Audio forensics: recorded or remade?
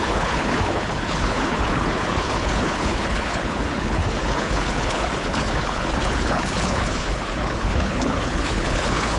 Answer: remade